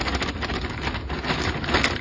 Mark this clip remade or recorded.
recorded